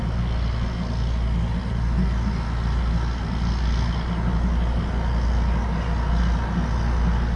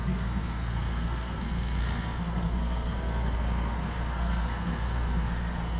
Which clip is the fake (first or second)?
second